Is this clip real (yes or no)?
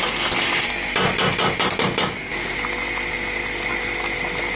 yes